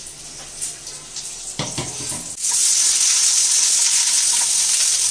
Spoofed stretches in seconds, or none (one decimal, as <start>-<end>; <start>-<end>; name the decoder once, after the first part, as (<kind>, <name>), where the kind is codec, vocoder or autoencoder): none